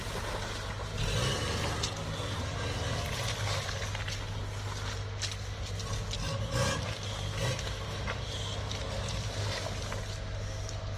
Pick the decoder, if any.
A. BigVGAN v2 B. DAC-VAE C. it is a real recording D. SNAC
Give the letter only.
C